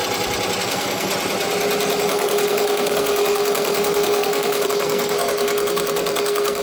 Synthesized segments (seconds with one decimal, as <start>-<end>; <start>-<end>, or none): 0.6-1.1; 2.0-6.6